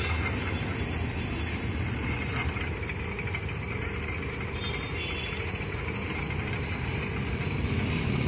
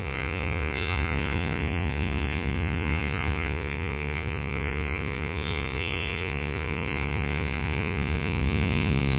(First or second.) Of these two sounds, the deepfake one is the second